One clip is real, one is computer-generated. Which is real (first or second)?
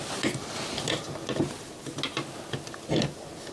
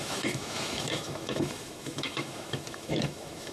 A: first